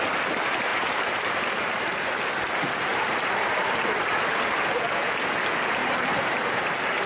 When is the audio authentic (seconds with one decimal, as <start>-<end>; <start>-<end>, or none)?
0.0-0.7; 2.1-2.9; 4.1-5.8